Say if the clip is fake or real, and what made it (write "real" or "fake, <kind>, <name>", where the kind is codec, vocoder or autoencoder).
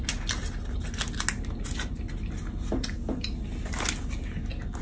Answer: real